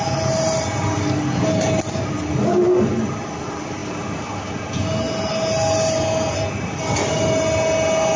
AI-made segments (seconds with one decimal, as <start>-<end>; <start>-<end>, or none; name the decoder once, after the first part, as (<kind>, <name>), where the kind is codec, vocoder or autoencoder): none